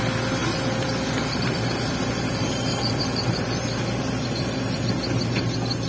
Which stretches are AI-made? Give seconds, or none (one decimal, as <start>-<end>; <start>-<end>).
none